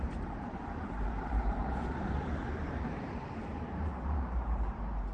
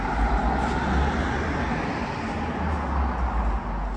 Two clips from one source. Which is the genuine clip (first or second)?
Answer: second